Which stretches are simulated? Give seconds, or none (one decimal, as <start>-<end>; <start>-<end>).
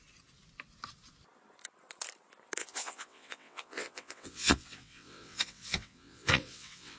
2.6-7.0